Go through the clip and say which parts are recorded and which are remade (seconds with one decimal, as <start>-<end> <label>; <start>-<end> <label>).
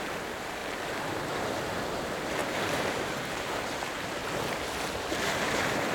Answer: 0.0-4.2 remade; 4.2-5.1 recorded; 5.1-5.9 remade